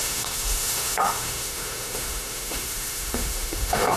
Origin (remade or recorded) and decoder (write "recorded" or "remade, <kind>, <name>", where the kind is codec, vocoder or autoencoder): remade, autoencoder, DAC-VAE